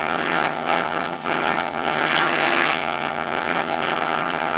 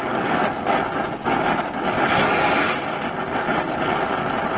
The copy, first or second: first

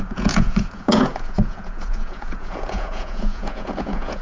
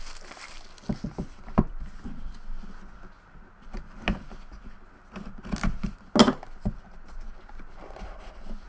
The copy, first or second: first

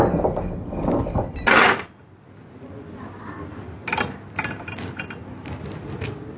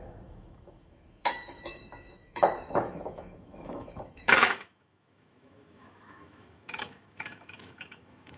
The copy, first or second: second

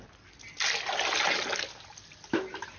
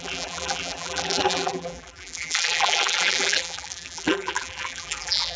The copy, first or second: second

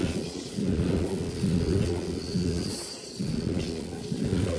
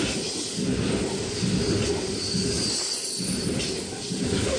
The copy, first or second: first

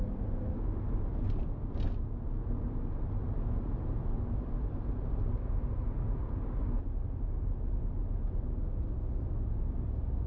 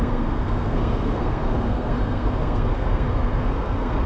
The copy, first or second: second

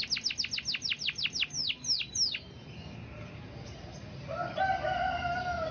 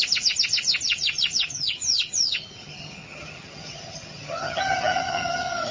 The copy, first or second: second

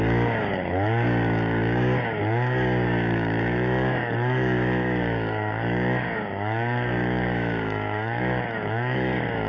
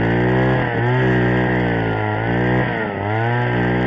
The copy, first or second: first